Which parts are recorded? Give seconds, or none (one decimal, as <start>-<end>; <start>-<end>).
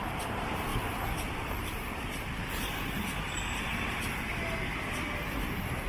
0.0-0.7; 4.2-5.9